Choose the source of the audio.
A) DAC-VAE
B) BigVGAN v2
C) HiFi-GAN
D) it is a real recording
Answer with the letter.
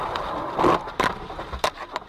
D